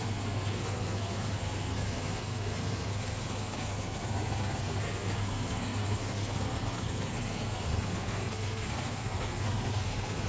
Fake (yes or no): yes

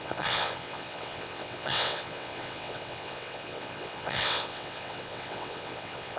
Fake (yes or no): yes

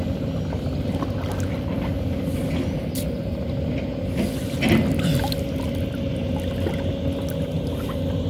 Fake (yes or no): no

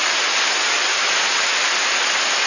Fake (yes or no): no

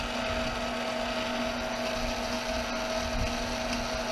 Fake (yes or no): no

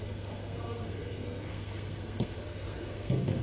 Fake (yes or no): yes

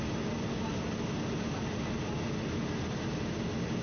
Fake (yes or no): no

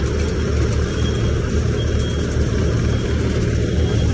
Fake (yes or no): no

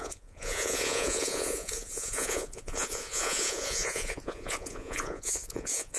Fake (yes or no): yes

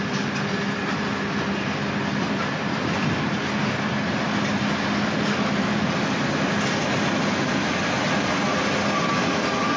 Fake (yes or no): no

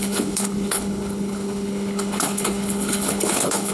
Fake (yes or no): yes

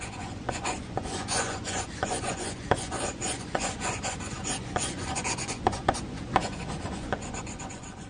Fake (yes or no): yes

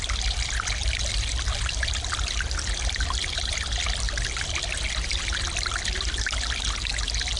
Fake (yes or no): no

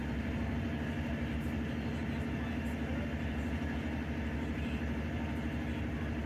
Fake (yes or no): no